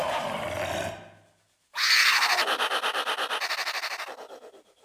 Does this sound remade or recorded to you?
recorded